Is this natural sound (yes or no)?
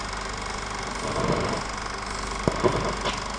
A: yes